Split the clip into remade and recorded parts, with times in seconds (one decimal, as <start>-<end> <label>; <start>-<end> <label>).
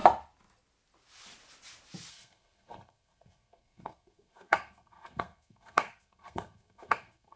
0.0-2.1 recorded; 2.1-7.4 remade